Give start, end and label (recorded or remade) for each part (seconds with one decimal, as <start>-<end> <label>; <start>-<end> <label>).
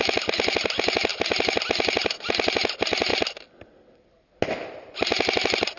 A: 0.0-5.8 recorded